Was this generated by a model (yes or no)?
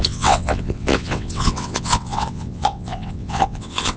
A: yes